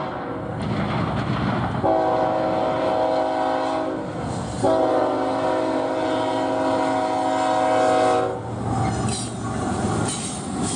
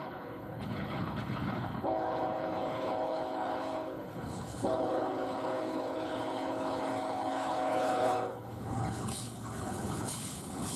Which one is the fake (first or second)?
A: second